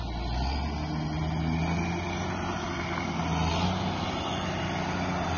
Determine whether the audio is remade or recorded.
recorded